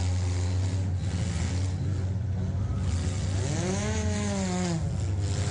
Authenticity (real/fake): real